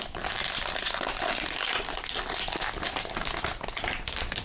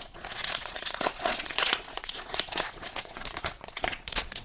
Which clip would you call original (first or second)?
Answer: first